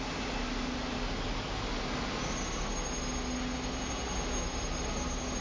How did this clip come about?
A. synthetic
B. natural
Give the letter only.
B